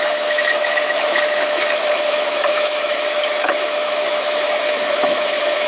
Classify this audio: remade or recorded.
remade